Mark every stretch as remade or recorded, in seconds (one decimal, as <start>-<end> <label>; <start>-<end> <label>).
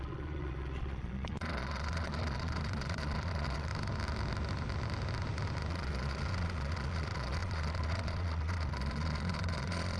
0.0-3.7 remade; 3.7-5.7 recorded; 5.7-10.0 remade